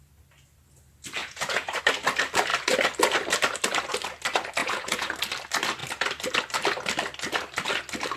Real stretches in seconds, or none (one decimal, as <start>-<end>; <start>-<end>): 0.0-1.2; 1.8-4.6; 5.1-8.2